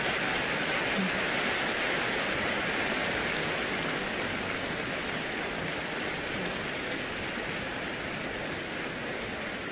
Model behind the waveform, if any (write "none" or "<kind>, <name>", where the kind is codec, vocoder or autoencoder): none